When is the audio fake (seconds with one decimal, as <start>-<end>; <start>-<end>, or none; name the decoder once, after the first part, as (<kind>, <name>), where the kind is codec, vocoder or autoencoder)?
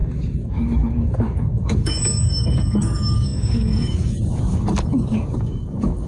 0.0-6.1 (codec, DAC)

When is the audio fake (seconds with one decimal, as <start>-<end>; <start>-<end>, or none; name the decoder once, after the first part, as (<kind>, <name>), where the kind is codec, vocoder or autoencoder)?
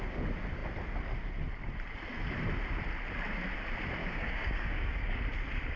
4.0-5.2 (codec, DAC)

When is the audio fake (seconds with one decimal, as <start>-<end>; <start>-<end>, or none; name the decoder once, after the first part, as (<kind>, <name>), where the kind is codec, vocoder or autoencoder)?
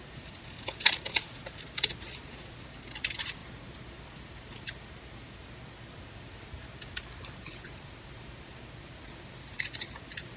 none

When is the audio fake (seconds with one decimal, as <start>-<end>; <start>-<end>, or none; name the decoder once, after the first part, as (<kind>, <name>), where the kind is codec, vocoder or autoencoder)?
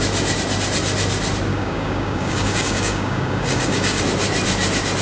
1.5-4.0 (codec, DAC)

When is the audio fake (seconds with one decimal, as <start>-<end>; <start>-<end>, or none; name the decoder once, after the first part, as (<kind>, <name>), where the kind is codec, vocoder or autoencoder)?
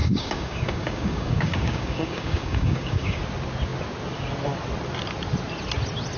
0.0-3.2 (codec, DAC)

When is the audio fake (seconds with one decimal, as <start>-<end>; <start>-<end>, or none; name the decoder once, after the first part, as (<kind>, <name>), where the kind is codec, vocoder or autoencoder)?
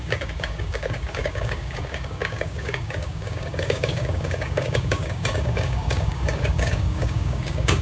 0.0-7.8 (codec, DAC)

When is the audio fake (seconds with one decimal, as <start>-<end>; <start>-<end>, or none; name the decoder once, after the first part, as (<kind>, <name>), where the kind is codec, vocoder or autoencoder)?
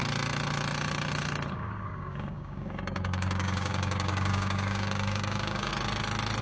1.5-5.7 (codec, DAC)